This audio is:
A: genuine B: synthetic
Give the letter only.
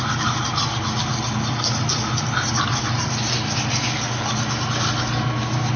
A